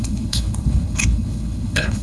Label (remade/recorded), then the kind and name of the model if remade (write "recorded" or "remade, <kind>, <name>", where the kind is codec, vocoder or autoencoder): remade, codec, HILCodec